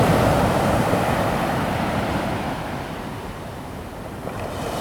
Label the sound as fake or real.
fake